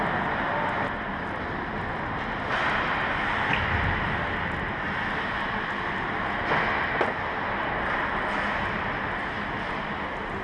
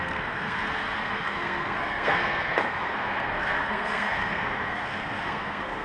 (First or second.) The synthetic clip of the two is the second